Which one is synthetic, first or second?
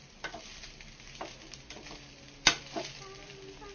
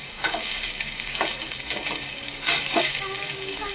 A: second